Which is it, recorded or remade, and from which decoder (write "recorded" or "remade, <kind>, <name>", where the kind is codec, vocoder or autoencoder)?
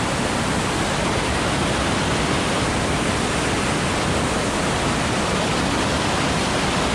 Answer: recorded